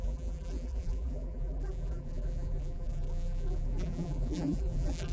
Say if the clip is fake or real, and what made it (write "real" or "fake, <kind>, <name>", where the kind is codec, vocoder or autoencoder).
fake, vocoder, BigVGAN v2